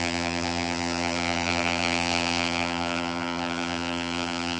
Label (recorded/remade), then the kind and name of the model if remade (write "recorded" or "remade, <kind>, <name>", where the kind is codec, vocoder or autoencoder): remade, vocoder, BigVGAN v2